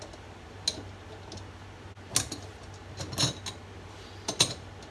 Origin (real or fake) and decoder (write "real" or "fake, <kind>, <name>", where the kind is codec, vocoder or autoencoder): real